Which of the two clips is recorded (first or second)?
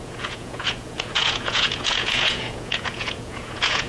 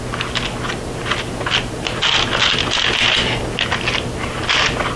second